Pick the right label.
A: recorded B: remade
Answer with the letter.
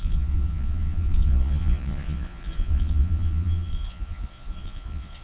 B